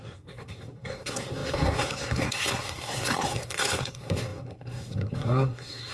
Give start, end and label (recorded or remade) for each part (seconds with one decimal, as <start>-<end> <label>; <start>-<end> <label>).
0.0-5.9 remade